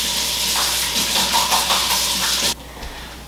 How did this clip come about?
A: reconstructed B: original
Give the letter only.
B